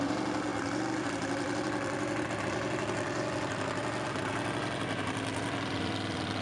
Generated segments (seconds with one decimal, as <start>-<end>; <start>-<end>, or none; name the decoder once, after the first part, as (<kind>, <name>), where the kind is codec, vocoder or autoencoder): 0.0-6.4 (vocoder, BigVGAN v2)